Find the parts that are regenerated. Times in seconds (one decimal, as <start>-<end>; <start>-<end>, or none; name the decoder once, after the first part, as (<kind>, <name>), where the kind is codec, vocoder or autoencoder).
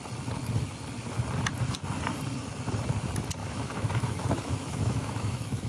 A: 3.4-5.7 (autoencoder, DAC-VAE)